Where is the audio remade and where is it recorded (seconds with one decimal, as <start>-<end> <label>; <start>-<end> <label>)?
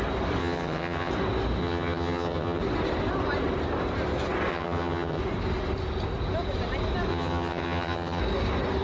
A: 0.0-0.4 recorded; 0.4-1.1 remade; 1.1-1.6 recorded; 1.6-2.6 remade; 2.6-4.5 recorded; 4.5-5.2 remade; 5.2-7.1 recorded; 7.1-8.2 remade; 8.2-8.8 recorded